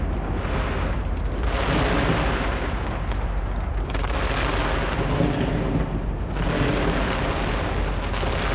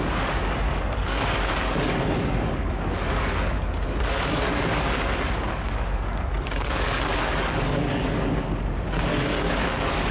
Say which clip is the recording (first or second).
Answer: first